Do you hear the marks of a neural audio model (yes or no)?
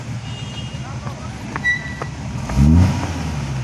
no